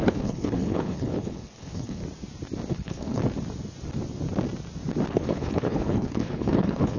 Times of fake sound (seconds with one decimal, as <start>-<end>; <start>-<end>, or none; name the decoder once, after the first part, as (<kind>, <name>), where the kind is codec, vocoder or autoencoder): 0.0-2.0 (codec, HILCodec); 2.7-3.2; 5.1-7.0